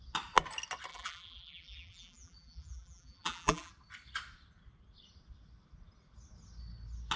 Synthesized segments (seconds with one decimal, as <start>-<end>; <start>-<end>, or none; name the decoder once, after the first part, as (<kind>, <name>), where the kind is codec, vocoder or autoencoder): 0.9-3.7 (vocoder, BigVGAN v2)